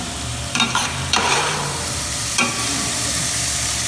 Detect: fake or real fake